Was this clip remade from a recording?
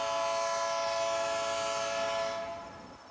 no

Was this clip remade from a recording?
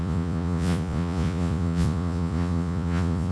yes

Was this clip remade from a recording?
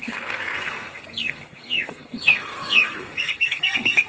yes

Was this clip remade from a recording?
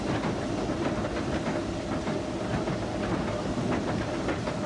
no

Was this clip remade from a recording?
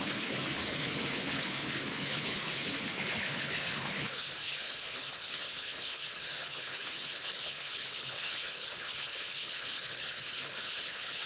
yes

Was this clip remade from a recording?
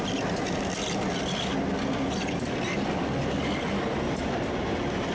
no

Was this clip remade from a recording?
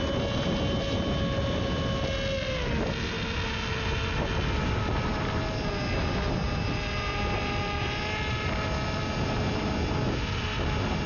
no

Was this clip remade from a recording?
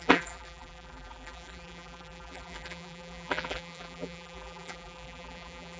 yes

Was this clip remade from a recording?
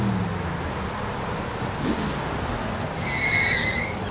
no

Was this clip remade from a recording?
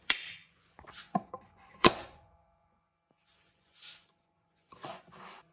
yes